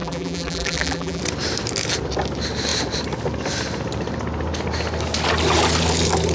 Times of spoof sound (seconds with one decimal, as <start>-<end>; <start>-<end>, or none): 0.0-1.2

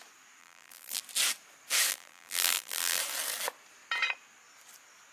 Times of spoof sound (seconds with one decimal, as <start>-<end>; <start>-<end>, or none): 0.4-1.0; 1.9-3.0

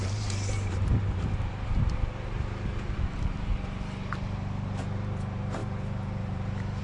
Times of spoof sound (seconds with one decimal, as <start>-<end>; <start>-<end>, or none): 0.0-6.8

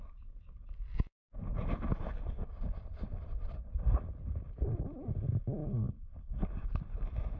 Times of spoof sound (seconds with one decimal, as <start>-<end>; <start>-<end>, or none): none

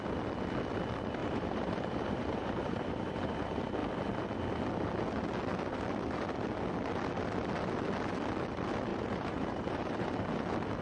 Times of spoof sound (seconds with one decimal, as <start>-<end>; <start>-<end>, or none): 1.2-3.3; 8.9-10.1

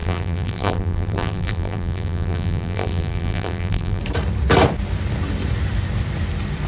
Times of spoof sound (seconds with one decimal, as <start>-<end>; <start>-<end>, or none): 0.0-4.0

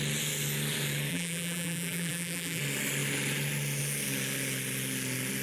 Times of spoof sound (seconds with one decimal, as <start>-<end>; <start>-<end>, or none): 1.1-2.6

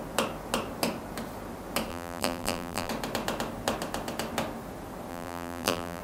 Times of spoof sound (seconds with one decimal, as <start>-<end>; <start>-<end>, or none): 1.9-2.9; 5.1-6.0